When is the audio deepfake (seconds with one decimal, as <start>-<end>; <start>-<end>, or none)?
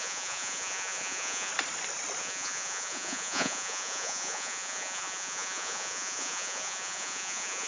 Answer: 0.0-1.5; 2.2-7.7